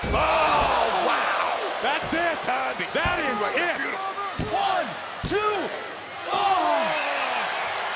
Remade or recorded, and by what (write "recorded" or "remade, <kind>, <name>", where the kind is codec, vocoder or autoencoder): recorded